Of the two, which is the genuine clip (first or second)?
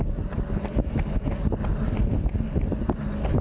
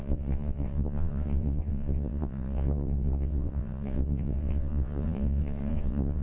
first